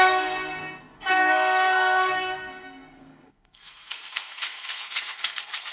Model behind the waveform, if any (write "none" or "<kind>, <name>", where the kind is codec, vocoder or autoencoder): codec, SNAC